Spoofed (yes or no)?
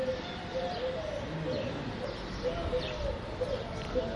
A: no